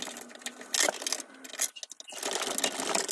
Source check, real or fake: real